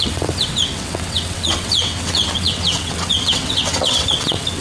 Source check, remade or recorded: remade